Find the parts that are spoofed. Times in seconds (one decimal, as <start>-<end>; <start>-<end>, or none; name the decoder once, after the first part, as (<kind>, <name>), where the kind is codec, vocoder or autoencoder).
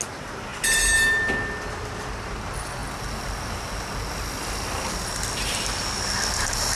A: none